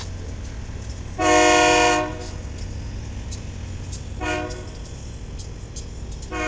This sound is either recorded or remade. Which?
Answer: recorded